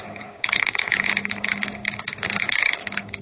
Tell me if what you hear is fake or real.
fake